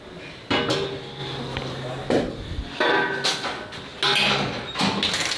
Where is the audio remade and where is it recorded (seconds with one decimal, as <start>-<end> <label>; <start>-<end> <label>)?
0.0-1.2 recorded; 1.2-2.1 remade; 2.1-5.4 recorded